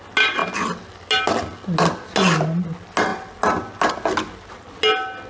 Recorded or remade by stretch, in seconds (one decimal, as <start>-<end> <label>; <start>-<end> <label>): 0.0-5.3 recorded